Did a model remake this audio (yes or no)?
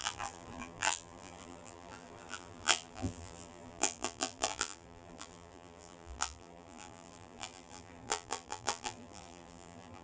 yes